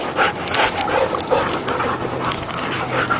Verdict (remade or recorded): recorded